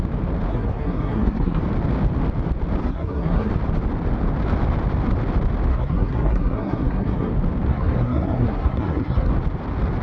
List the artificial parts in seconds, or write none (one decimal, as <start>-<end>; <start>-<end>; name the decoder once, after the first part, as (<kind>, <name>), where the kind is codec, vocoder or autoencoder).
0.5-1.6 (codec, SNAC); 2.8-3.5; 5.7-7.3; 7.7-9.3